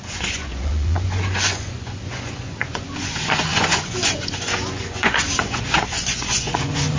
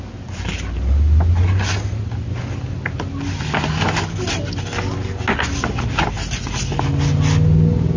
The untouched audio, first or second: second